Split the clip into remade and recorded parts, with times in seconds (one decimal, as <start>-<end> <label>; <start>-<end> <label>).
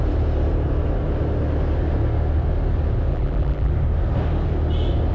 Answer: 0.0-3.1 recorded; 3.1-3.7 remade; 3.7-5.1 recorded